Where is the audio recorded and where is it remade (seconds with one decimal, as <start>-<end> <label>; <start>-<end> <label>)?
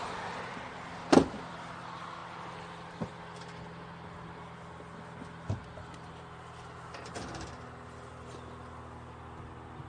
0.0-9.9 recorded